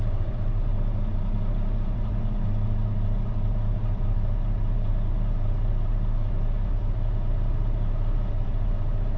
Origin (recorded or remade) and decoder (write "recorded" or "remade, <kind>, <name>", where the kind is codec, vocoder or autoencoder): remade, vocoder, BigVGAN v2